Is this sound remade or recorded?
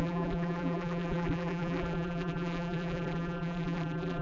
remade